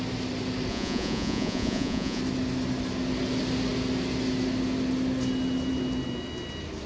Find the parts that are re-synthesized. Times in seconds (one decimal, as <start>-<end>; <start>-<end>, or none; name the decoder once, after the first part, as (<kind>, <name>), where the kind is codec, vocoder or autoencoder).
0.7-2.2 (vocoder, Vocos)